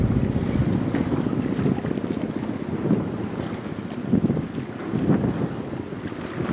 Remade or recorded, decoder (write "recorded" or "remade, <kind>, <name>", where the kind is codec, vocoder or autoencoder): recorded